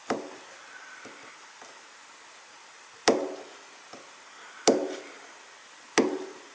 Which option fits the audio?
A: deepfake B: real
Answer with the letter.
B